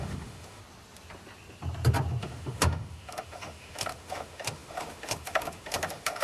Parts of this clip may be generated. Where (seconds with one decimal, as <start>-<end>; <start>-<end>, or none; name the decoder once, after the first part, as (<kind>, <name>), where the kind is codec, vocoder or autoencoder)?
0.0-0.6 (autoencoder, DAC-VAE); 2.2-6.2